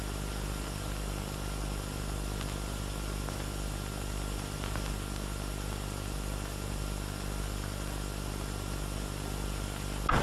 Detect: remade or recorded recorded